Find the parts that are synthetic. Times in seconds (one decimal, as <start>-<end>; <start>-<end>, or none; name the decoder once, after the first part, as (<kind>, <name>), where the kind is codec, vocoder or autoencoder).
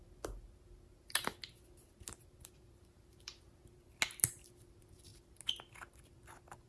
none